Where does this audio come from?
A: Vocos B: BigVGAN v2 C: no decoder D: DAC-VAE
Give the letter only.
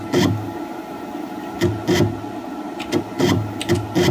C